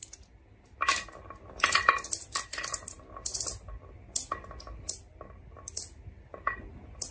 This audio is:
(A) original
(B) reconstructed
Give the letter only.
A